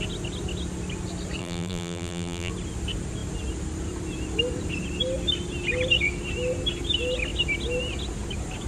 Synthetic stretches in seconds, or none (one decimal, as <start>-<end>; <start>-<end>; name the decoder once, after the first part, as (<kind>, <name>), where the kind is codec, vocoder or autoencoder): 1.4-2.5 (vocoder, BigVGAN v2)